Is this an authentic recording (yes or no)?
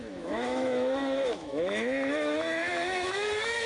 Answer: no